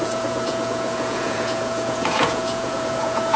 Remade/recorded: remade